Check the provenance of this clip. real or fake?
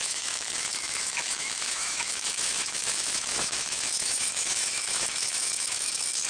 fake